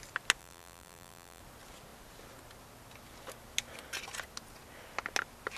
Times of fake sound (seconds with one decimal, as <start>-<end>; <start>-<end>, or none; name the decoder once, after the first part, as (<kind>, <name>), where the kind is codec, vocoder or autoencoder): 0.4-1.4 (vocoder, BigVGAN v2)